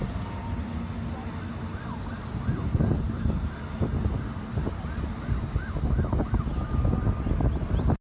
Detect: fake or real real